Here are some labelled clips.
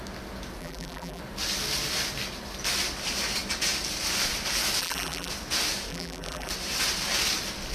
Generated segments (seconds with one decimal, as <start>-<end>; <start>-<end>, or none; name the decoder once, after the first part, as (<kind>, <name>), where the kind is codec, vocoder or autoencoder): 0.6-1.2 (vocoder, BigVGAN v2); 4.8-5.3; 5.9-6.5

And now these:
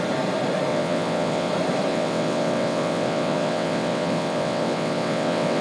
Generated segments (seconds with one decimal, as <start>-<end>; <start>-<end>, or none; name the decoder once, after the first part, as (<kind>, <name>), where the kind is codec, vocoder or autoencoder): 0.7-1.5 (vocoder, WaveNeXt); 1.9-5.6

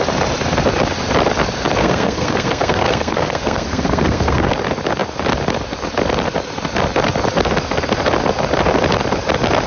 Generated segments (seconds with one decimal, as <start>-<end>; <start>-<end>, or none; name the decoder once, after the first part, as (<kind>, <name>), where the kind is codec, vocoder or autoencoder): 1.8-4.5 (codec, SNAC)